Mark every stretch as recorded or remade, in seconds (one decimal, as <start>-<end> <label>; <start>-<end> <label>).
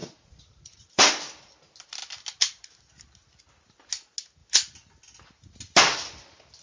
0.0-1.1 remade; 1.1-6.6 recorded